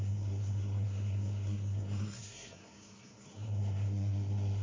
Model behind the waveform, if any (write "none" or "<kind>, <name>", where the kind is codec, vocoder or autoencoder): codec, SNAC